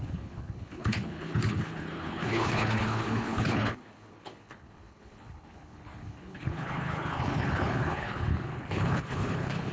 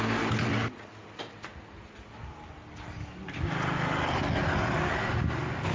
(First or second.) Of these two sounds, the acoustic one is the second